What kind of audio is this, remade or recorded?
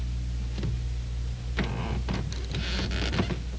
recorded